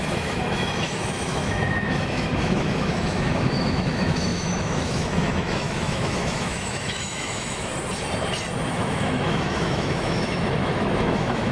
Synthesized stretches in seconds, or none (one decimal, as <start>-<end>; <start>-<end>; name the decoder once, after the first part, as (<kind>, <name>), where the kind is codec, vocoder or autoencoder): 0.0-7.7 (autoencoder, DAC-VAE); 8.7-11.5